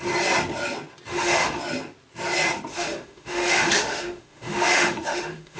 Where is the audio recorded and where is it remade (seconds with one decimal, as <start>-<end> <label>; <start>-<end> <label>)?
0.0-1.1 recorded; 1.1-1.6 remade; 1.6-2.7 recorded; 2.7-5.6 remade